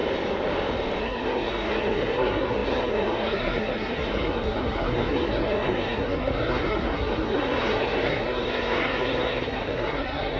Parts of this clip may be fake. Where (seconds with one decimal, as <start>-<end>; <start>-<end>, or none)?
1.0-10.4